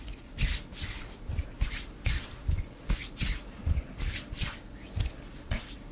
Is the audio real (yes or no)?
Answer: yes